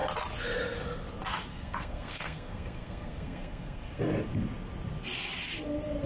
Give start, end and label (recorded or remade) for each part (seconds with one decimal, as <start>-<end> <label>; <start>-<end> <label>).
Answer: 0.0-1.5 recorded; 1.5-4.0 remade; 4.0-6.1 recorded